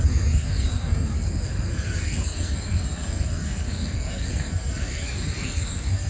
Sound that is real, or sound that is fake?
fake